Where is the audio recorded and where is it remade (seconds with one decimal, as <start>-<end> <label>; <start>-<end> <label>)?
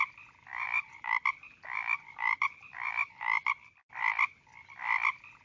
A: 0.0-0.5 recorded; 0.5-3.7 remade; 3.7-5.4 recorded